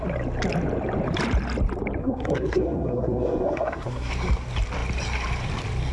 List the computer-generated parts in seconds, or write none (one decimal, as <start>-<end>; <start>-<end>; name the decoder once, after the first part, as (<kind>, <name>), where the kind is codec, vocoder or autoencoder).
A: 2.0-4.1 (codec, SNAC)